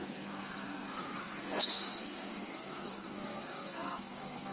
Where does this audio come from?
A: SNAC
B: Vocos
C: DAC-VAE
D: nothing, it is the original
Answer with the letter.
A